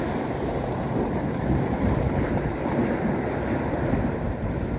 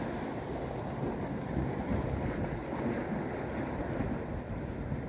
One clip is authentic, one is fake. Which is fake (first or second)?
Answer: first